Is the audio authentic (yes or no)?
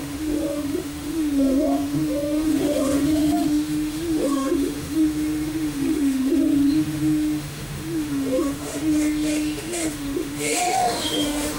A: no